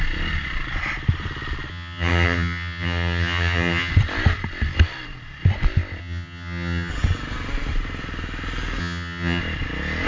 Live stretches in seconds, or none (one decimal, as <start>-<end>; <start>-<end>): 0.0-1.7; 3.9-6.0; 6.9-8.8; 9.4-10.1